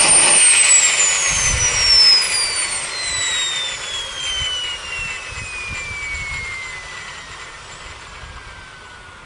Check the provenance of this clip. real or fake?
real